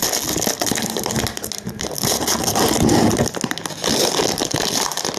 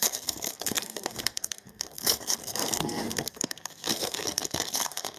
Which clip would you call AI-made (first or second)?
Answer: second